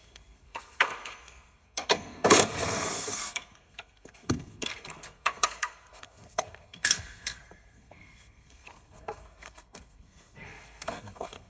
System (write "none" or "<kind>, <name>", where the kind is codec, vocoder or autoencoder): codec, SNAC